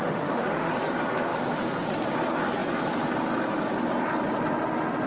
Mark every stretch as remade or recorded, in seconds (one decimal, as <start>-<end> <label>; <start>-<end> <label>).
0.0-0.7 remade; 0.7-5.1 recorded